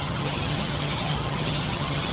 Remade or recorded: remade